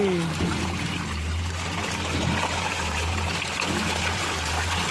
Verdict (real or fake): real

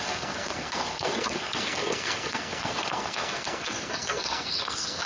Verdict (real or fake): fake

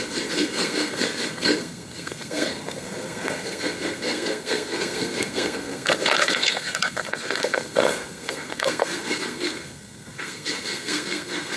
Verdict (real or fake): fake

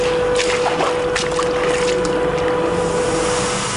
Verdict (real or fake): real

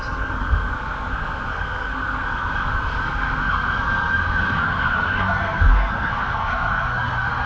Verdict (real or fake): fake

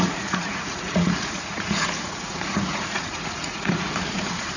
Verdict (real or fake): fake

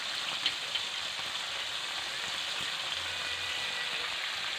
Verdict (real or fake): real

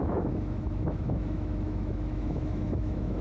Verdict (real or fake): fake